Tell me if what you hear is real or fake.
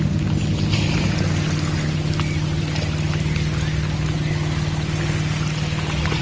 real